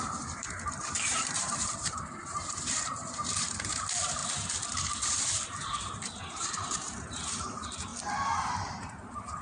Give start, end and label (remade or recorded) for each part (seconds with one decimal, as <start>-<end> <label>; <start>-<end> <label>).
0.0-4.2 remade; 4.2-5.2 recorded; 5.2-7.9 remade; 7.9-8.7 recorded; 8.7-9.4 remade

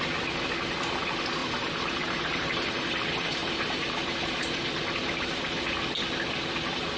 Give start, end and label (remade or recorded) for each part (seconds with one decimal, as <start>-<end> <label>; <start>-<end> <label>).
0.0-1.4 recorded; 1.4-5.6 remade; 5.6-7.0 recorded

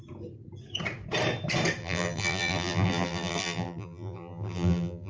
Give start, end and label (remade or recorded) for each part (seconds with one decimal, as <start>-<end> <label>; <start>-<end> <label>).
0.0-1.8 recorded; 1.8-5.1 remade

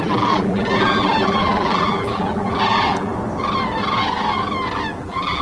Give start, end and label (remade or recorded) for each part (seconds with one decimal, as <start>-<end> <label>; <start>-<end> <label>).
0.0-3.1 remade; 3.1-5.0 recorded; 5.0-5.4 remade

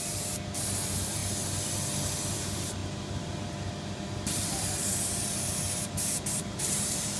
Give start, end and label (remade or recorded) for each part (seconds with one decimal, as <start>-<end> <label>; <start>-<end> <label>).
0.0-1.2 remade; 1.2-2.3 recorded; 2.3-7.2 remade

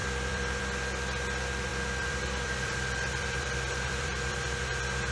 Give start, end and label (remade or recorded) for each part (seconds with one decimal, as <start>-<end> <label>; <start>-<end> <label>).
0.0-0.6 remade; 0.6-1.7 recorded; 1.7-4.5 remade; 4.5-5.1 recorded

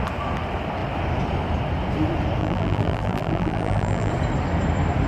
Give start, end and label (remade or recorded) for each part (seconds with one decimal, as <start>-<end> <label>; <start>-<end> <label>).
0.0-2.4 recorded; 2.4-4.1 remade; 4.1-5.1 recorded